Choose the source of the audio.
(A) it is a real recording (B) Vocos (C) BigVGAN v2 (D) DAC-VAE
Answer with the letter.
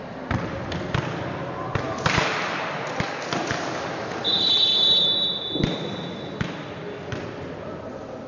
A